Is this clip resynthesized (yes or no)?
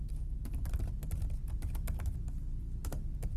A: no